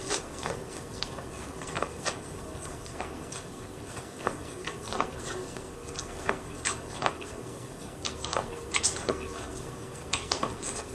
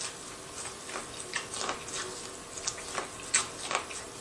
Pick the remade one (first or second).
first